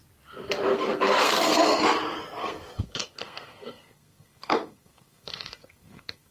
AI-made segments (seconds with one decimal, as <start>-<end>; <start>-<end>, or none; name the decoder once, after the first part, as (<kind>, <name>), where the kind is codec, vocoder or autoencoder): 0.7-1.8 (codec, SNAC); 2.4-6.3